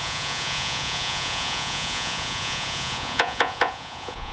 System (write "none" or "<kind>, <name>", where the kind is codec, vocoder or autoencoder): vocoder, Vocos